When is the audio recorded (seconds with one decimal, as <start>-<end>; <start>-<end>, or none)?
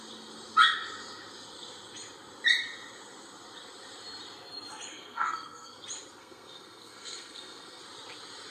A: 0.0-4.9; 5.8-6.2; 7.8-8.5